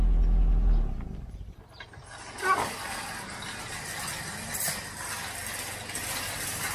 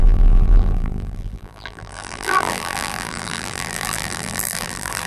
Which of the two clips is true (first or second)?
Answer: first